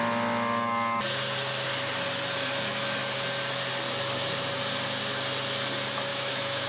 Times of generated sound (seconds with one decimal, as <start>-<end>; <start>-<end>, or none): 6.1-6.7